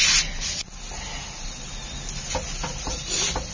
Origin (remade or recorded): recorded